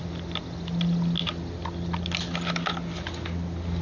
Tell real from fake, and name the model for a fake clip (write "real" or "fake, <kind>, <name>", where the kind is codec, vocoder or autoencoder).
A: real